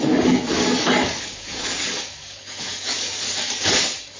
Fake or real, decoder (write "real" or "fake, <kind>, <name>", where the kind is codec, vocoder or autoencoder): fake, codec, DAC